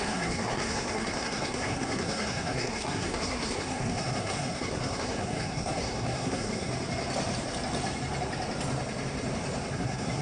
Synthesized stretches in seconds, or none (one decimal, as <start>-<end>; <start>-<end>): 0.0-6.7; 9.7-10.2